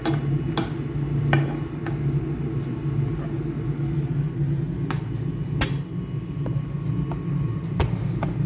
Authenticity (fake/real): real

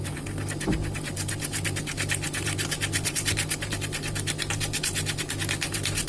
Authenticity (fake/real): real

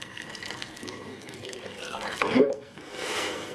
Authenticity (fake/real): fake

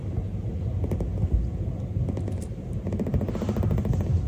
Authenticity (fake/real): real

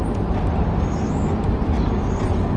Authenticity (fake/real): real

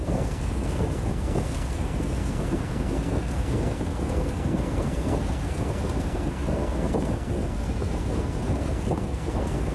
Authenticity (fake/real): fake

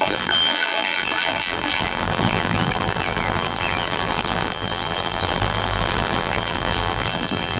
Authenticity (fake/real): fake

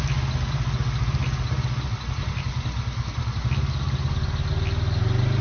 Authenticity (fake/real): real